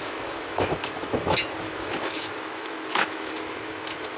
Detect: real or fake fake